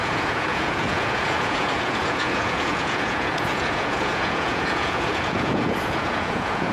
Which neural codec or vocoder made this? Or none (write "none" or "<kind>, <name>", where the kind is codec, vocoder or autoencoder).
vocoder, Vocos